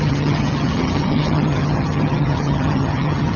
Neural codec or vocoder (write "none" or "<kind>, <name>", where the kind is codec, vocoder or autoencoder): vocoder, HiFi-GAN